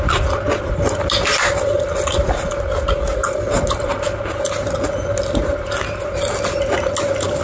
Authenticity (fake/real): real